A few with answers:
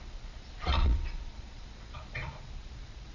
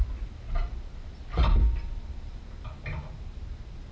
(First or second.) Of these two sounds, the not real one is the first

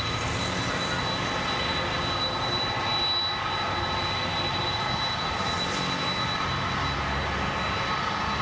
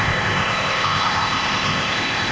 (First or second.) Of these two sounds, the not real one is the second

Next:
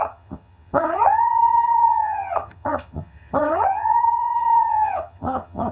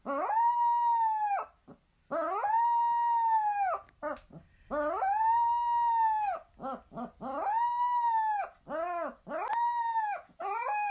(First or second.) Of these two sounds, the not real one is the first